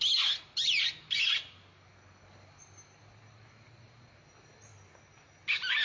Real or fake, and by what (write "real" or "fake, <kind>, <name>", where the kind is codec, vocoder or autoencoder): real